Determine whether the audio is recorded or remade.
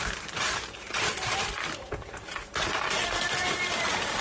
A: remade